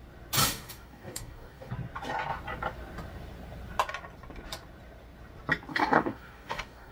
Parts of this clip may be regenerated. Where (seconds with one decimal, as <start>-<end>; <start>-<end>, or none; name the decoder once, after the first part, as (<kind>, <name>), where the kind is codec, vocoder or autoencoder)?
0.4-1.7 (codec, DAC); 5.7-6.9